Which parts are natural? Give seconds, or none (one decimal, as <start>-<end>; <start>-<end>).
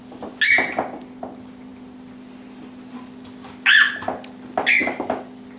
0.0-5.6